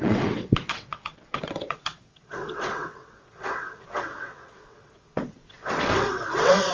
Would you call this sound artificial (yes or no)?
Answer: yes